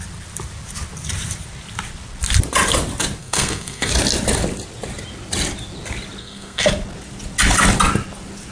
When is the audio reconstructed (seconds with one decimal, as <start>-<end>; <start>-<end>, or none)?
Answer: 3.2-3.9; 6.2-6.7